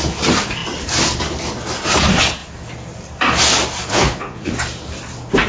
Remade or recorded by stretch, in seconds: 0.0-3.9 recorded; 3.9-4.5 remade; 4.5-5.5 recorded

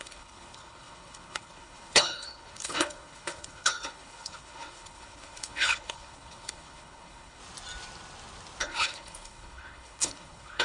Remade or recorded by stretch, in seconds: 0.0-7.4 remade; 7.4-8.6 recorded; 8.6-10.6 remade

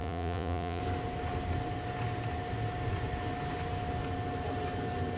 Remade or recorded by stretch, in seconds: 0.0-0.8 remade; 0.8-5.2 recorded

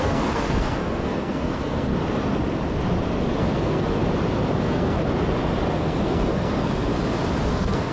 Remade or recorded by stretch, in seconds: 0.0-1.9 remade; 1.9-3.4 recorded; 3.4-4.0 remade; 4.0-4.6 recorded; 4.6-5.0 remade; 5.0-5.7 recorded; 5.7-6.9 remade; 6.9-7.5 recorded; 7.5-7.9 remade

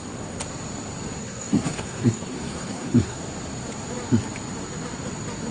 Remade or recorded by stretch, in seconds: 0.0-1.2 recorded; 1.2-3.2 remade; 3.2-5.5 recorded

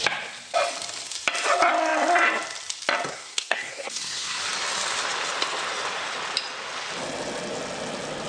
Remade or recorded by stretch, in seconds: 0.0-3.1 recorded; 3.1-4.4 remade; 4.4-8.3 recorded

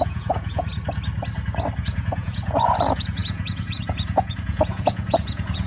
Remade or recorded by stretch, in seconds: 0.0-0.7 remade; 0.7-1.8 recorded; 1.8-5.7 remade